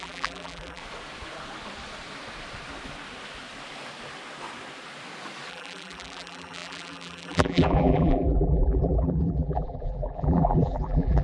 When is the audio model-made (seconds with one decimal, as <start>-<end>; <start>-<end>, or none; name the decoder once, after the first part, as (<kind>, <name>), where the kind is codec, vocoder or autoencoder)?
0.0-0.8 (vocoder, BigVGAN v2); 5.5-11.2